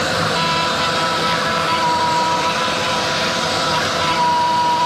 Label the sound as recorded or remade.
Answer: remade